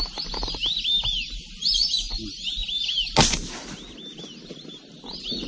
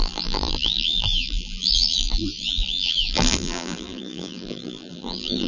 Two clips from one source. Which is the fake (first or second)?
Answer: second